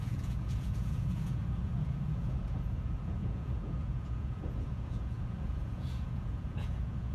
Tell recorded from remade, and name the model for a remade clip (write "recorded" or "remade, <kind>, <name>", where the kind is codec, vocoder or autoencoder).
remade, vocoder, Vocos